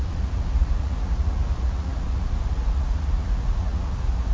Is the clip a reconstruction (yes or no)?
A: yes